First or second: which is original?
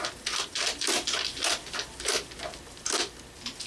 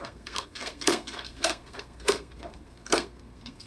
first